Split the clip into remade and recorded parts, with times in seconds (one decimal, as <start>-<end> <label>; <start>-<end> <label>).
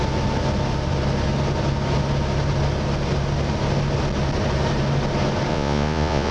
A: 0.0-5.5 recorded; 5.5-6.3 remade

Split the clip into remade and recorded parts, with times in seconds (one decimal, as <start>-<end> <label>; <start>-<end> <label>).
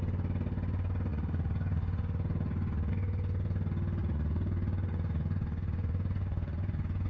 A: 0.0-1.1 recorded; 1.1-2.9 remade; 2.9-4.0 recorded; 4.0-7.1 remade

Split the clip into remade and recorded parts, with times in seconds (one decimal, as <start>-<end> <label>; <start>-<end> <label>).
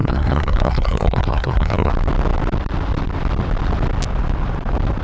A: 0.0-1.9 remade; 1.9-5.0 recorded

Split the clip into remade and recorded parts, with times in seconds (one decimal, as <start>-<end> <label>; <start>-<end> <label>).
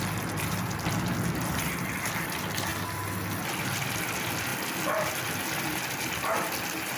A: 0.0-7.0 recorded